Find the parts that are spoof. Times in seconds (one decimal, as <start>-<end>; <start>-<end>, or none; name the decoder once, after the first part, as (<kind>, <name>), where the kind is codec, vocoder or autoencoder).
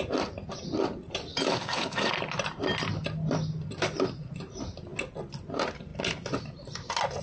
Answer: 1.3-2.1 (codec, DAC)